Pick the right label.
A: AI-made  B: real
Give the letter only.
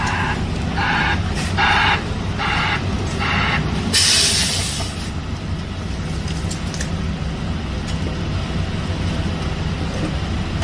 B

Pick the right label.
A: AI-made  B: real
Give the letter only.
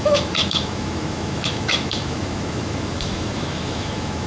A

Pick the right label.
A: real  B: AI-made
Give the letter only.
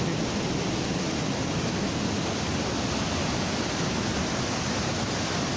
A